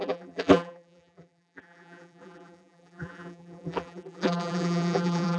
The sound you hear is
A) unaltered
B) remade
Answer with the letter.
B